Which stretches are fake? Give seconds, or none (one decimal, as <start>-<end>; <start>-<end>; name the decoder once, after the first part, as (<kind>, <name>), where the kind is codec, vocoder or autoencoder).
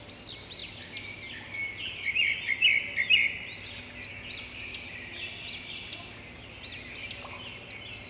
none